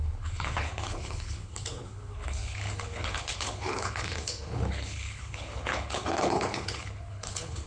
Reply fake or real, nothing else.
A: fake